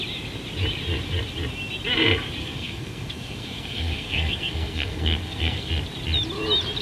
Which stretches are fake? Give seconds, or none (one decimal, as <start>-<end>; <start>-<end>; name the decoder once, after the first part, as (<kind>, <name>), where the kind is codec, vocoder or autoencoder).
2.4-5.7 (codec, SNAC)